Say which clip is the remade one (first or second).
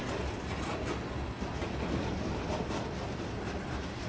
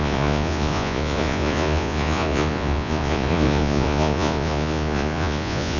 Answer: second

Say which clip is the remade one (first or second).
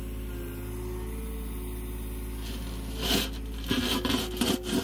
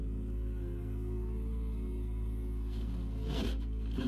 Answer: second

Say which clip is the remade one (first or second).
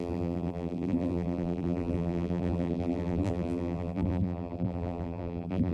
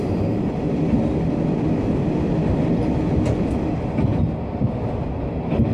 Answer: first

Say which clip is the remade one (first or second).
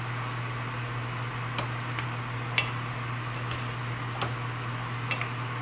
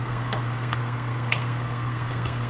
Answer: second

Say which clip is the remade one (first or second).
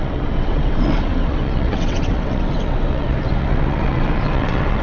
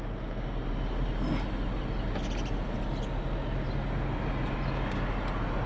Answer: first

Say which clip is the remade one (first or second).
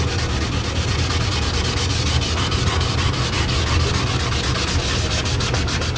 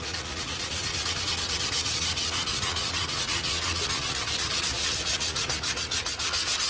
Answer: second